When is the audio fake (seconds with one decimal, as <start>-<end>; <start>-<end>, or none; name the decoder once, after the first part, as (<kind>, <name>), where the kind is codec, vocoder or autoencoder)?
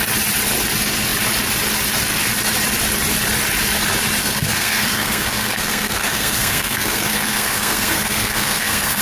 4.2-9.0 (codec, SNAC)